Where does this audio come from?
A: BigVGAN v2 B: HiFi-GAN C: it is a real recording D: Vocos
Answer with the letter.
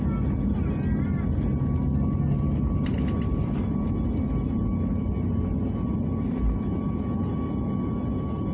C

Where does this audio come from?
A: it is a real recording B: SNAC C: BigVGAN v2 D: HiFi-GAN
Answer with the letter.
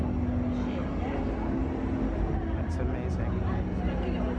A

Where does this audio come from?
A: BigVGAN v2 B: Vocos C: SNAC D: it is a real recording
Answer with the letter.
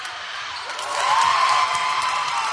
D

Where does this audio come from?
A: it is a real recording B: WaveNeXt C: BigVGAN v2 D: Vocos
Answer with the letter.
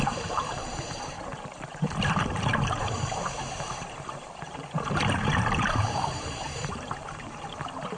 C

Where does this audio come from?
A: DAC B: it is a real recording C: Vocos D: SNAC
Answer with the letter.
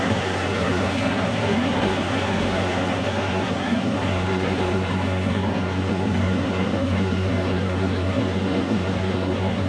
D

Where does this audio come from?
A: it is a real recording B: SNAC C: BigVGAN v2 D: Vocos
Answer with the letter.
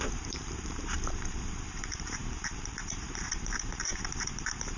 C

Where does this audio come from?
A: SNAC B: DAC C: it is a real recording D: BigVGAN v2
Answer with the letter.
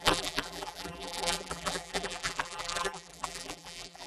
D